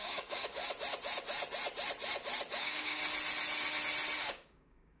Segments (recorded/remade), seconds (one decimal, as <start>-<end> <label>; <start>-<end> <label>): 0.0-0.6 remade; 0.6-2.6 recorded; 2.6-3.0 remade; 3.0-4.2 recorded; 4.2-5.0 remade